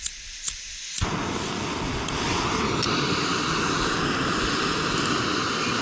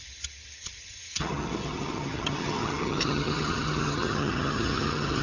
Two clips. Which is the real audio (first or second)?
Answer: first